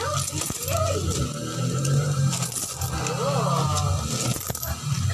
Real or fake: real